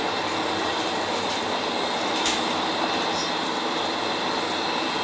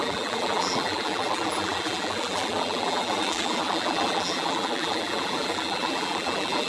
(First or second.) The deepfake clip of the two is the second